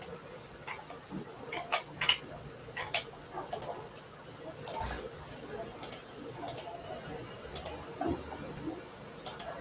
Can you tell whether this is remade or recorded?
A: recorded